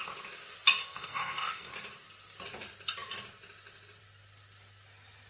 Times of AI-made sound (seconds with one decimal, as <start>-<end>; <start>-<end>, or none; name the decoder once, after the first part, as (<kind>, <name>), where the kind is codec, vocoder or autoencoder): 0.8-1.7 (codec, SNAC)

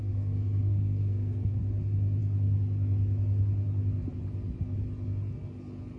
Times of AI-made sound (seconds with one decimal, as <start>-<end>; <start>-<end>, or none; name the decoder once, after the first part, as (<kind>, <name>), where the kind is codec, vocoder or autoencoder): 0.0-1.6 (codec, SNAC)